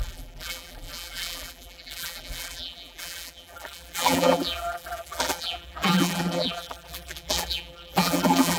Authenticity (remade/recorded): remade